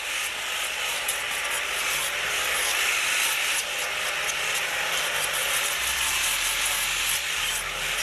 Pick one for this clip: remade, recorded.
recorded